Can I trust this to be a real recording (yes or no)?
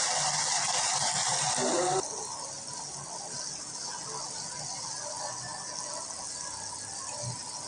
yes